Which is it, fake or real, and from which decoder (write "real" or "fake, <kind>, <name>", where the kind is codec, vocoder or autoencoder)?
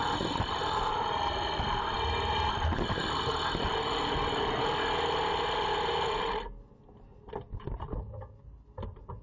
real